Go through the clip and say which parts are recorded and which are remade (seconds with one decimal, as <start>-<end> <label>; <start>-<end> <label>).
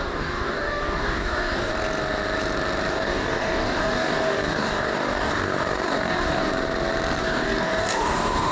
0.0-1.7 remade; 1.7-2.9 recorded; 2.9-6.5 remade; 6.5-7.2 recorded; 7.2-8.5 remade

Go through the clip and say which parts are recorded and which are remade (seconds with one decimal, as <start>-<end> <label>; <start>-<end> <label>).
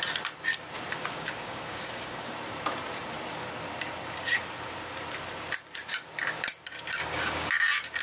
0.0-1.0 recorded; 1.0-2.3 remade; 2.3-7.0 recorded; 7.0-7.5 remade; 7.5-8.0 recorded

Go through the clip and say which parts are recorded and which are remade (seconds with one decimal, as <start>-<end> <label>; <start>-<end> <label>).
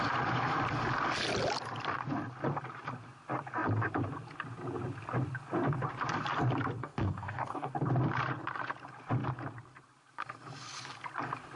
0.0-6.8 recorded; 6.8-7.7 remade; 7.7-11.6 recorded